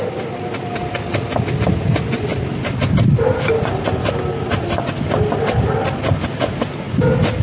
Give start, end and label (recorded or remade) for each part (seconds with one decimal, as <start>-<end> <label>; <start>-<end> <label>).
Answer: 0.0-7.4 recorded